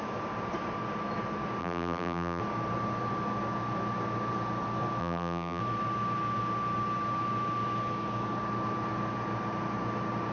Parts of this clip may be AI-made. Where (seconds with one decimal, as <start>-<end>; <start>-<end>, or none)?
1.6-2.4; 5.0-5.6